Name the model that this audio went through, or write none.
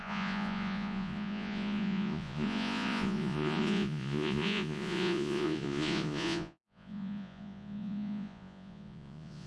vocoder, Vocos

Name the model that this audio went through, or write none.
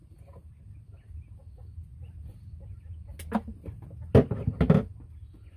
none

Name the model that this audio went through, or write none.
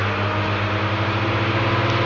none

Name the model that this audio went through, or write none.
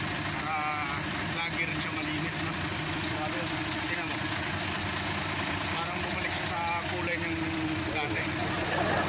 none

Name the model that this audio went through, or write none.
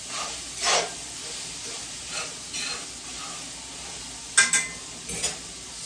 none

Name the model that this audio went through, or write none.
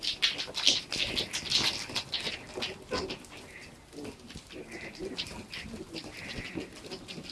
none